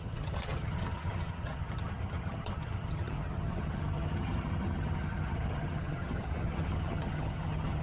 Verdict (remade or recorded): remade